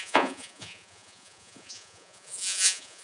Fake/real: fake